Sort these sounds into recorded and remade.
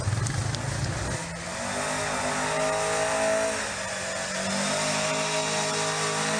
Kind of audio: recorded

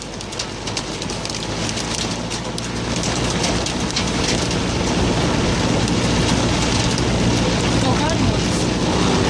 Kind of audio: recorded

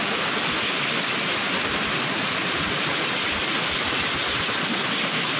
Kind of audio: recorded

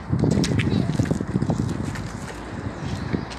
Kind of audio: recorded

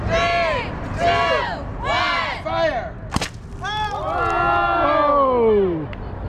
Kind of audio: recorded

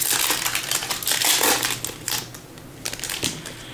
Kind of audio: recorded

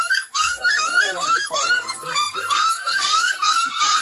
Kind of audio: remade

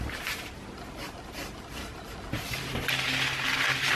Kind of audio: recorded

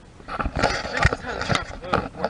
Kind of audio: recorded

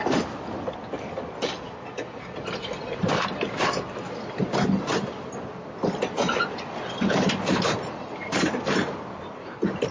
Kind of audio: recorded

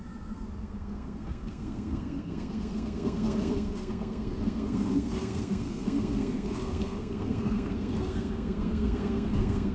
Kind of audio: remade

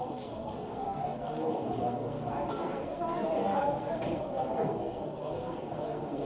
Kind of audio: remade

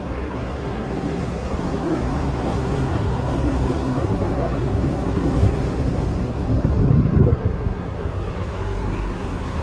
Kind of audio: remade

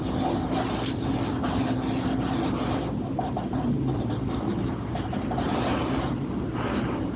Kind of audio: recorded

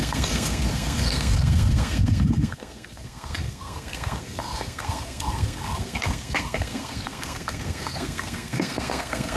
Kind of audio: remade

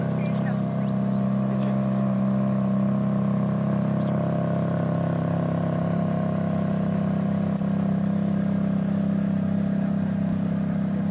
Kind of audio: recorded